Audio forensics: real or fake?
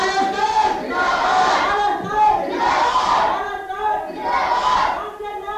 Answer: real